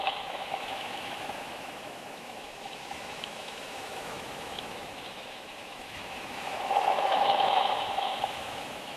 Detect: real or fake fake